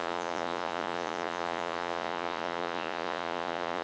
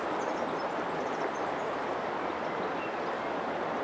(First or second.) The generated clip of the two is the first